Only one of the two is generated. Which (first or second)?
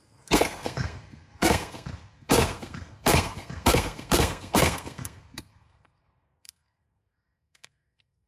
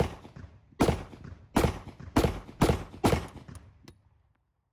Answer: first